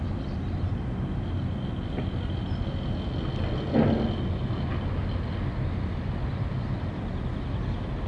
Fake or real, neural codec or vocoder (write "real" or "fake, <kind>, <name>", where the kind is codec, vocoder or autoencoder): real